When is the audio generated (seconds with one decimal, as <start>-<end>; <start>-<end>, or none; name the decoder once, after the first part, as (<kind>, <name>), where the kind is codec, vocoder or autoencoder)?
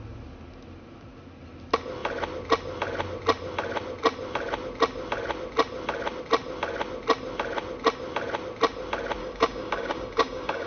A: 9.2-10.7 (codec, DAC)